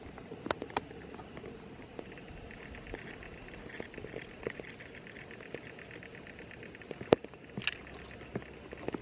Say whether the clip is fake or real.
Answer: real